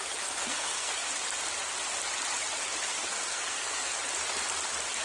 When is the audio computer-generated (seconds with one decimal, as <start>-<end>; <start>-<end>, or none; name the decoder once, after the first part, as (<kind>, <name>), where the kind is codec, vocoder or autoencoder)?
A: 0.4-1.0 (codec, SNAC); 2.9-3.9